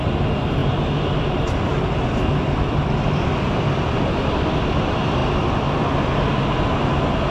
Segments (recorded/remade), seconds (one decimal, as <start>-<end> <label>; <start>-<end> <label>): 0.0-7.3 recorded